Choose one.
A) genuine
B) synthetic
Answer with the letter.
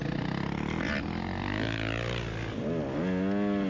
A